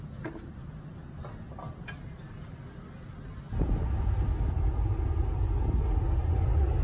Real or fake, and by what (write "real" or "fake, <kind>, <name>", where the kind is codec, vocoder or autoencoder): real